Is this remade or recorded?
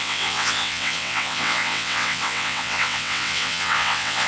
remade